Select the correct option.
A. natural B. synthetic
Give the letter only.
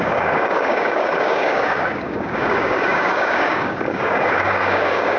B